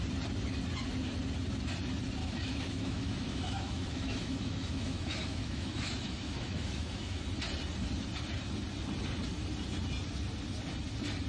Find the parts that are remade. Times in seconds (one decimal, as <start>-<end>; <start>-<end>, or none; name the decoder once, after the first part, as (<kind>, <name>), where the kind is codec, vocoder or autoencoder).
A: 2.2-7.2 (autoencoder, DAC-VAE)